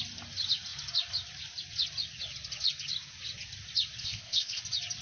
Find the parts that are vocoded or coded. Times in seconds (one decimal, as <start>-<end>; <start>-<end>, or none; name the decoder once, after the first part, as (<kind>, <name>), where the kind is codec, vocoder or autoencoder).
4.0-4.6 (codec, ZipCodec)